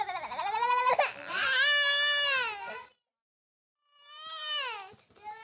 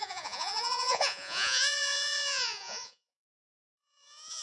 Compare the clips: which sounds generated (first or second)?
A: second